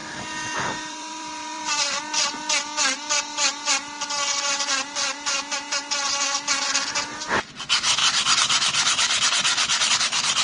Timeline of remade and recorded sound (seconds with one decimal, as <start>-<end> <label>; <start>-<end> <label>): 0.0-2.0 remade; 2.0-8.0 recorded; 8.0-9.9 remade; 9.9-10.4 recorded